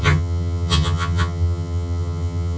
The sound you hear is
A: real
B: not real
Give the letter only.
B